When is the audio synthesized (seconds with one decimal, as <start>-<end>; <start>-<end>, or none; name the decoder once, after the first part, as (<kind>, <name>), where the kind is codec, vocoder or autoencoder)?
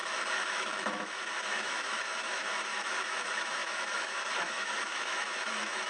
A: 0.0-5.9 (autoencoder, DAC-VAE)